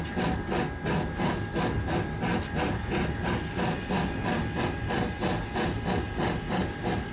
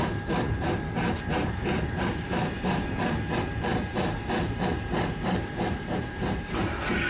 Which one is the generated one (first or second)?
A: second